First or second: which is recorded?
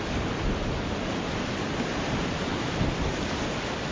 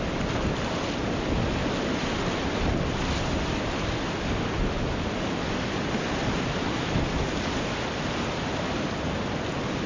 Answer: second